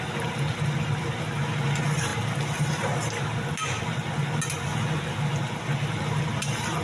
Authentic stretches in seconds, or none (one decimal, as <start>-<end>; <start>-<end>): 0.0-6.8